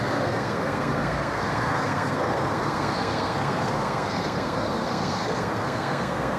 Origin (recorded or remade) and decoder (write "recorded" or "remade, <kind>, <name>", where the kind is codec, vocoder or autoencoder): remade, codec, SNAC